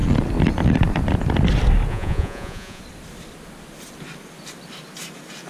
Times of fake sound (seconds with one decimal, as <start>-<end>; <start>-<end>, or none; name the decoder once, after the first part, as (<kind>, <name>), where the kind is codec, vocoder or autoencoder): 1.9-2.8 (vocoder, Vocos)